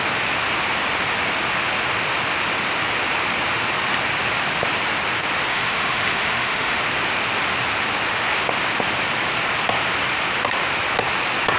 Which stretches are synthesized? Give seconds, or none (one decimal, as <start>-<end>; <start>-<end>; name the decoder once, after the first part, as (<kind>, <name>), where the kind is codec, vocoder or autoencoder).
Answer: 5.5-6.8 (autoencoder, DAC-VAE)